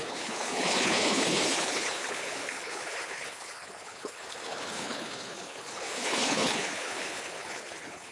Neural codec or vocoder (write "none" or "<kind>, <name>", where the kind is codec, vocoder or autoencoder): codec, HILCodec